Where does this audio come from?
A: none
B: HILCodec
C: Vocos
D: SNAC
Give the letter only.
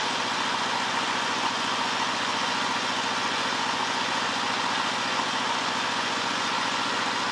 C